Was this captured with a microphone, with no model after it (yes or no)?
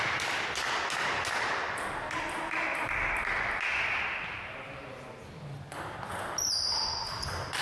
yes